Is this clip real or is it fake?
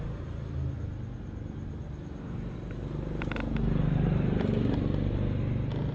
real